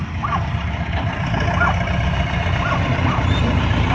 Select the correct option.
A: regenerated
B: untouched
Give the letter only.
B